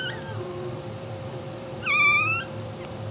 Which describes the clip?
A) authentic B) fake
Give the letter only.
B